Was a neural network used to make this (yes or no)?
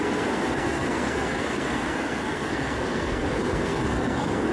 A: yes